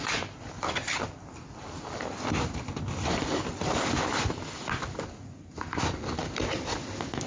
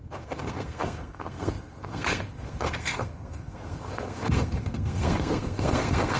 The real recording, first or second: first